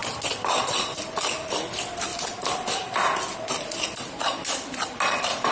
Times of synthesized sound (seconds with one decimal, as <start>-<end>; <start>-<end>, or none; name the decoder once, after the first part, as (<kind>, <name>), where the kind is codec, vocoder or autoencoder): none